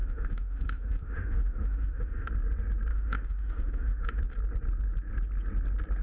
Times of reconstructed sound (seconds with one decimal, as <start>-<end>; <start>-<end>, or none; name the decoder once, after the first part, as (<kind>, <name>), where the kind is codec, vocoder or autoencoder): 0.0-2.3 (autoencoder, DAC-VAE); 2.9-4.2